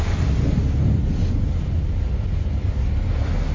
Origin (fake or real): real